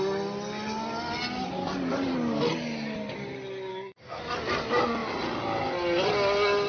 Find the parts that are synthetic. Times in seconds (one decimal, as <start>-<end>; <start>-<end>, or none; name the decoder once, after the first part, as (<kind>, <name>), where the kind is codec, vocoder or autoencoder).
3.7-4.2 (codec, SNAC)